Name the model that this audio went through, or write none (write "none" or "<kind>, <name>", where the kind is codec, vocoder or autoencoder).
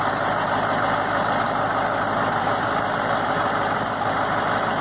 none